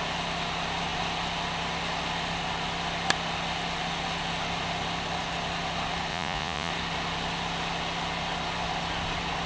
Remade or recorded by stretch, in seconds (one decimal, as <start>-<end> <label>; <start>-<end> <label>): 0.0-6.1 recorded; 6.1-6.7 remade; 6.7-9.5 recorded